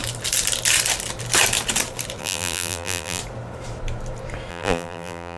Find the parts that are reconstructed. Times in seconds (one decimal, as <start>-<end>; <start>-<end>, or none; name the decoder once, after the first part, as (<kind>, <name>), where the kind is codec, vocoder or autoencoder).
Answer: 2.2-3.2 (vocoder, BigVGAN v2); 4.5-5.4